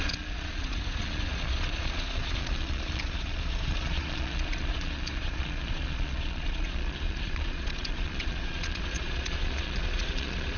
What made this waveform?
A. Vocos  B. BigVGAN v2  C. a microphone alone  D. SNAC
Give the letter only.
A